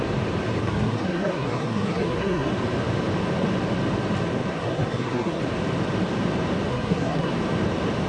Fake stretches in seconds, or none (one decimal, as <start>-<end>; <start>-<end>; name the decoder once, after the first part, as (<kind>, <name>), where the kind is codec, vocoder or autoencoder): 0.6-2.5 (codec, SNAC); 4.5-5.4; 6.7-7.3